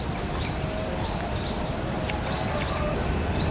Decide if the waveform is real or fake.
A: real